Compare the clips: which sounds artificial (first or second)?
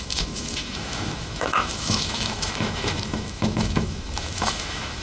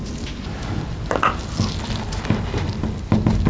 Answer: first